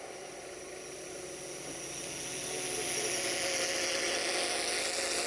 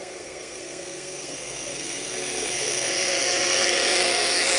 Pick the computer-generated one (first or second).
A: second